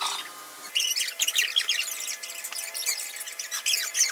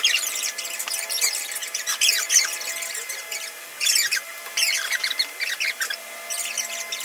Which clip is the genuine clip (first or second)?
first